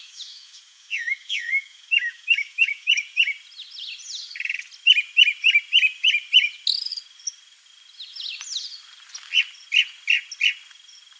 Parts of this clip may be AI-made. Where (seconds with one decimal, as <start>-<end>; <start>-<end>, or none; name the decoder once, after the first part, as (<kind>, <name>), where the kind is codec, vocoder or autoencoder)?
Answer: 0.0-3.0 (autoencoder, DAC-VAE)